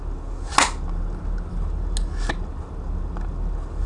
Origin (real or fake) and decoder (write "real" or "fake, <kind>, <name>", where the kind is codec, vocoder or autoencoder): real